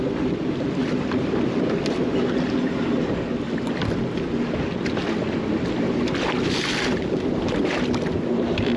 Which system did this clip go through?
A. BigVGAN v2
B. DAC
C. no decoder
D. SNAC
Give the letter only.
C